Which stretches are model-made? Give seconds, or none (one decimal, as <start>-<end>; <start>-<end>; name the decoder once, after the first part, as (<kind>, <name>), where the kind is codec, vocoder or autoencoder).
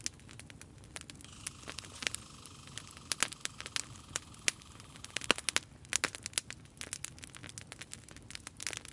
none